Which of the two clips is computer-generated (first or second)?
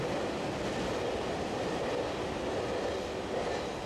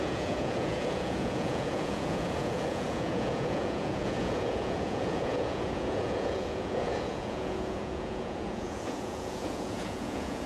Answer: second